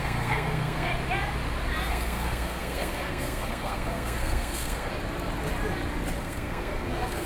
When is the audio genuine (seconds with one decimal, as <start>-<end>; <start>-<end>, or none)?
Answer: 0.9-1.9; 4.9-6.2